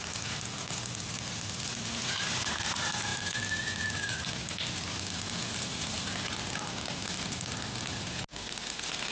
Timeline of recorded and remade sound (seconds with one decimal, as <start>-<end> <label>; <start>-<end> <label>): 0.0-9.1 recorded